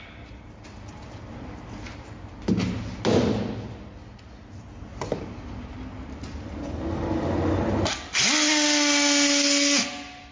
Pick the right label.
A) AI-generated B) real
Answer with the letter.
B